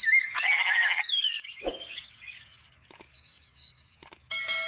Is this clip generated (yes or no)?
yes